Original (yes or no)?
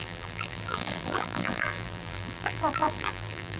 no